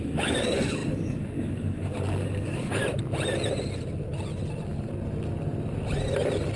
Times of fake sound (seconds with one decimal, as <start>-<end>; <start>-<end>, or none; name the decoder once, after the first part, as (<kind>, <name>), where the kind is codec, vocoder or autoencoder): 0.0-2.8 (codec, DAC)